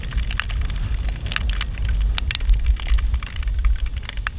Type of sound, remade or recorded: recorded